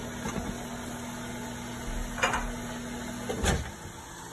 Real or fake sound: real